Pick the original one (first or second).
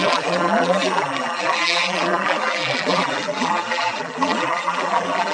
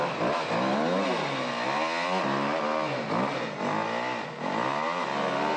second